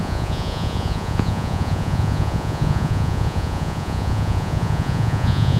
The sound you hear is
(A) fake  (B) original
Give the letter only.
A